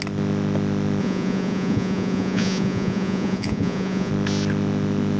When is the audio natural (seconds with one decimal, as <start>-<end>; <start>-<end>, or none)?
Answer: 0.0-1.0; 4.1-5.2